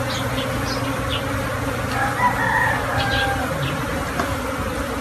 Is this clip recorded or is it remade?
recorded